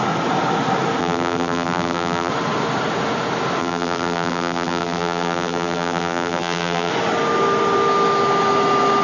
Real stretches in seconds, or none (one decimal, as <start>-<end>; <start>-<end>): 0.0-1.0; 2.3-3.6; 6.9-9.0